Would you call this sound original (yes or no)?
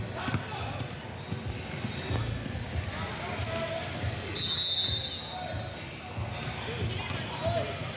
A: yes